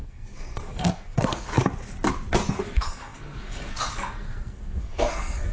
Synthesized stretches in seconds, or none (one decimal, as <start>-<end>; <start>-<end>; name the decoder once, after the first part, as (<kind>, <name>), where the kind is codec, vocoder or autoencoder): 0.0-1.5 (codec, SNAC); 2.5-5.5

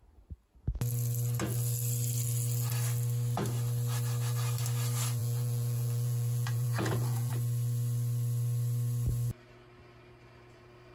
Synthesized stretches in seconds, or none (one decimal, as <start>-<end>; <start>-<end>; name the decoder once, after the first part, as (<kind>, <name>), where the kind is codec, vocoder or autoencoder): 5.2-7.3 (vocoder, Vocos)